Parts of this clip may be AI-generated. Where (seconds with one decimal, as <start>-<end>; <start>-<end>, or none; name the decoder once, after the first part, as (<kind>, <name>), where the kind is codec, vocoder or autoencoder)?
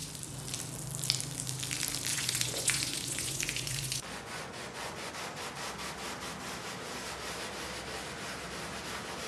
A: 2.1-5.1 (vocoder, Vocos)